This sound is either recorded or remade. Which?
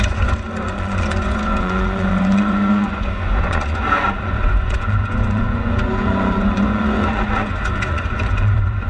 remade